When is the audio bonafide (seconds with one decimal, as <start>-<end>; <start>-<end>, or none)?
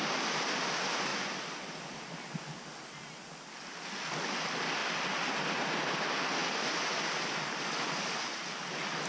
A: 0.0-9.1